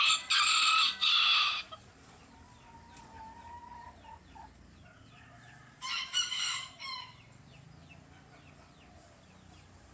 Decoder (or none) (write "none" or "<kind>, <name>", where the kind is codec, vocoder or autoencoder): none